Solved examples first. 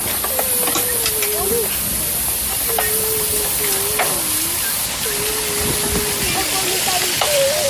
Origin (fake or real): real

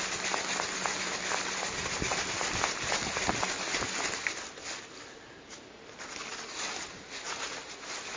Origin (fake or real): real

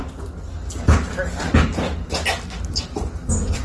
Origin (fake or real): real